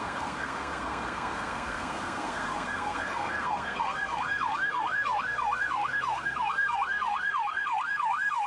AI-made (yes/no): yes